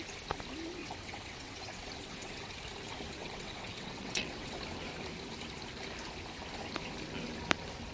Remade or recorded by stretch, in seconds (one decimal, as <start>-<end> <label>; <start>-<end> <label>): 0.0-0.8 recorded; 0.8-2.5 remade; 2.5-3.2 recorded; 3.2-4.6 remade; 4.6-7.9 recorded